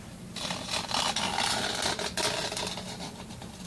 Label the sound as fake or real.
real